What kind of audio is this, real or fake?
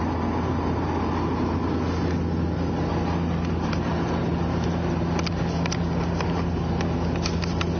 real